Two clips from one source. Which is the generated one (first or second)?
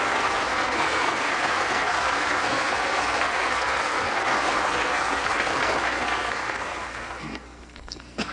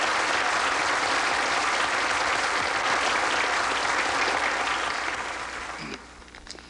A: first